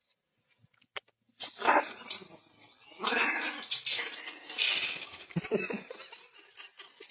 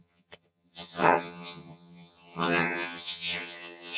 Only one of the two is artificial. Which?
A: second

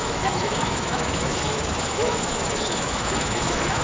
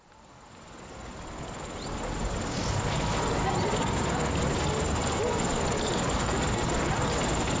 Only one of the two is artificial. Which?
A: first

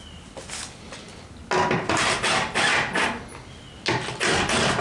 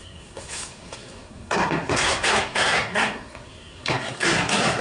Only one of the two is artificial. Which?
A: second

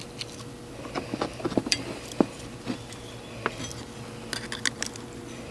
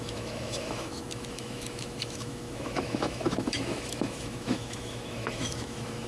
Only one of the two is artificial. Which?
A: second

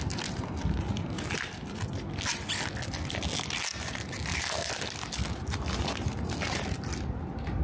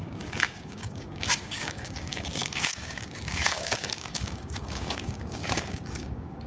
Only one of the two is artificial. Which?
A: second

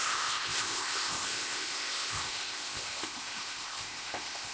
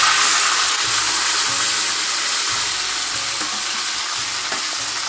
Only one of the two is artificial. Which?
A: first